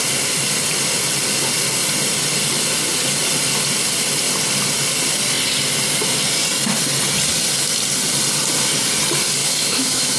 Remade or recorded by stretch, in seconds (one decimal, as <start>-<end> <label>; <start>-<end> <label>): 0.0-9.4 recorded; 9.4-10.2 remade